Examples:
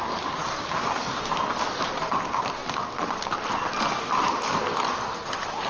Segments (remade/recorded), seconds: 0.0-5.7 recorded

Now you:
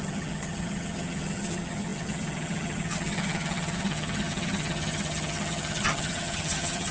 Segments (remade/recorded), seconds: 0.0-6.9 remade

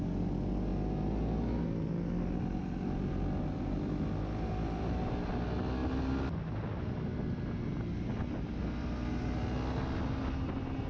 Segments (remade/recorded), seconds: 0.0-10.9 recorded